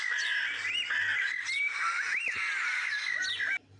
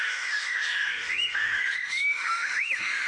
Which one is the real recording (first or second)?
first